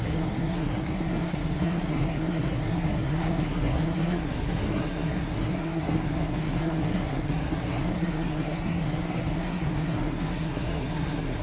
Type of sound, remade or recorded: remade